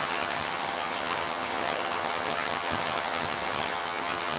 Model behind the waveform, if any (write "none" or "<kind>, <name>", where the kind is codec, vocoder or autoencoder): vocoder, HiFi-GAN